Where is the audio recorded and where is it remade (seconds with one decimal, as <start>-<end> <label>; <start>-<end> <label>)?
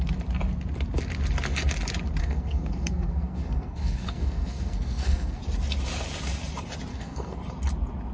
0.0-2.2 recorded; 2.2-5.4 remade; 5.4-6.9 recorded; 6.9-7.4 remade; 7.4-8.1 recorded